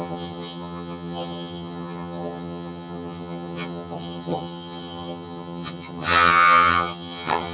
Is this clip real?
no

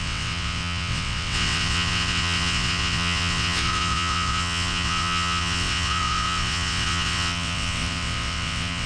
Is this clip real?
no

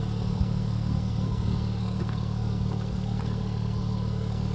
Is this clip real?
no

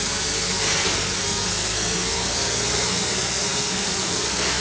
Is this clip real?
no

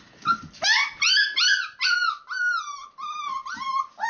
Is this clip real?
yes